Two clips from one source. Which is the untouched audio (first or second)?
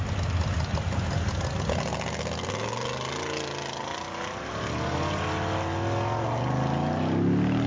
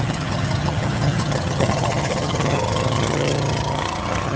first